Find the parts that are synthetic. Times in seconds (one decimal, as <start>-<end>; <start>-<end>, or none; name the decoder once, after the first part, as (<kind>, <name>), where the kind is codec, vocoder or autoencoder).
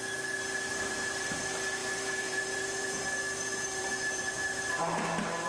0.7-1.4 (vocoder, BigVGAN v2); 1.8-3.0; 3.8-4.7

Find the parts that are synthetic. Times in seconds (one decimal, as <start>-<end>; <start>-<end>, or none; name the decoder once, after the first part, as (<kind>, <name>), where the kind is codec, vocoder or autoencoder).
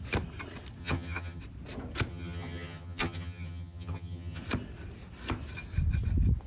0.8-1.4 (vocoder, HiFi-GAN); 2.1-4.4